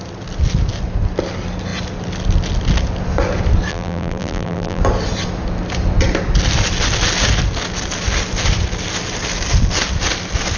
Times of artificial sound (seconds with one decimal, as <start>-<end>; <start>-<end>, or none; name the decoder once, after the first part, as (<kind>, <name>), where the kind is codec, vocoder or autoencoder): 3.7-4.8 (vocoder, BigVGAN v2)